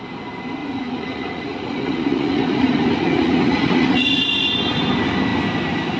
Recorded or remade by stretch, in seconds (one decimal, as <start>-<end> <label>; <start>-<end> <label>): 0.0-0.6 recorded; 0.6-4.2 remade; 4.2-6.0 recorded